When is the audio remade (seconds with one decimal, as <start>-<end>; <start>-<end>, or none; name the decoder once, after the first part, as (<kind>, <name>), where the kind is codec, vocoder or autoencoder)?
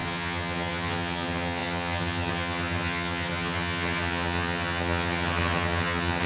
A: 0.0-6.3 (vocoder, HiFi-GAN)